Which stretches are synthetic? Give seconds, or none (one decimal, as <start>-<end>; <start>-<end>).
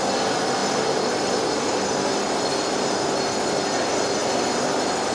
none